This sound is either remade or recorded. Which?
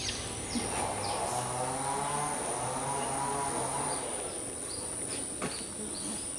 recorded